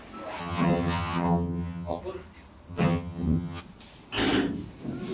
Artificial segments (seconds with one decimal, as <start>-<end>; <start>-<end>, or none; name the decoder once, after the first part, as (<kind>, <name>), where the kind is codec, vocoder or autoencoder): 0.4-2.0 (vocoder, HiFi-GAN); 2.7-3.6